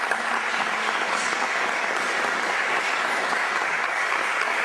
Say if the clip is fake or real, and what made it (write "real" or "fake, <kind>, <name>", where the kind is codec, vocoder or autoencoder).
fake, codec, DAC